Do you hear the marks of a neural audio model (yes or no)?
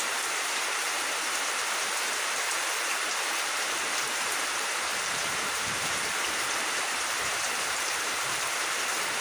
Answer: yes